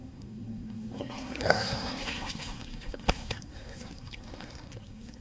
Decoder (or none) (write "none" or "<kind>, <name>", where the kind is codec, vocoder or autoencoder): codec, SNAC